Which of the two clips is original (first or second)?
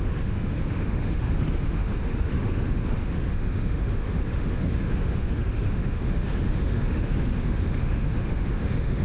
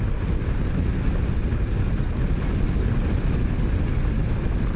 second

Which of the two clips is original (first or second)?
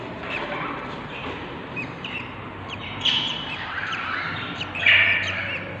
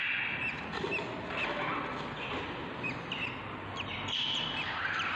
second